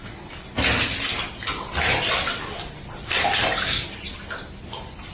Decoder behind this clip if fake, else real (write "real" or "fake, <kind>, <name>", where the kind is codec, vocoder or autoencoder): real